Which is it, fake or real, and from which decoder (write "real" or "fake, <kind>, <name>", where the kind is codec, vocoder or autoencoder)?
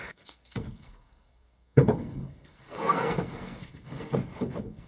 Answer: fake, codec, SNAC